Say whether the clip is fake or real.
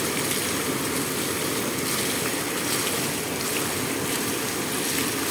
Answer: real